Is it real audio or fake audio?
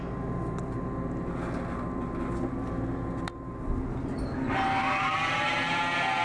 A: real